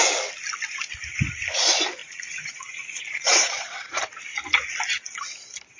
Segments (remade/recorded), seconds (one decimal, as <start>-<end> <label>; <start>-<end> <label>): 0.0-2.0 recorded; 2.0-4.0 remade; 4.0-5.8 recorded